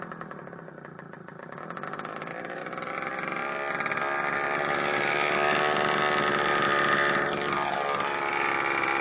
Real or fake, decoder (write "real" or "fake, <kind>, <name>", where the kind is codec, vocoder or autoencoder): real